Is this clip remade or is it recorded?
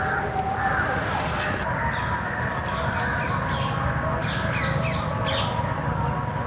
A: recorded